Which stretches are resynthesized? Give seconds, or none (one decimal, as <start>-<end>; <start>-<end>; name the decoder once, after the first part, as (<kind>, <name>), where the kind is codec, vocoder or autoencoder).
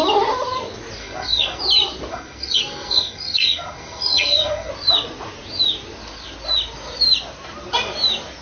1.0-1.6 (codec, SNAC); 2.1-4.7